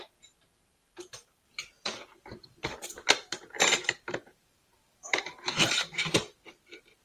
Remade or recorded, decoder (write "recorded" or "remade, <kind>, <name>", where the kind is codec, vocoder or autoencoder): remade, vocoder, BigVGAN v2